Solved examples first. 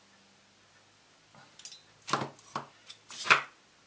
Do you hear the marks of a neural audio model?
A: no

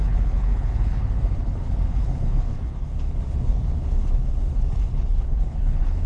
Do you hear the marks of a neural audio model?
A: yes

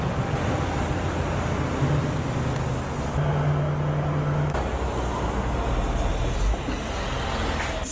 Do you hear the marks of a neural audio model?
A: no